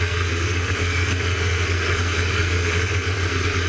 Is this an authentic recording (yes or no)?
no